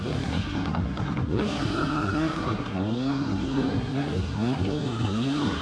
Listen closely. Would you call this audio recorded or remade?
remade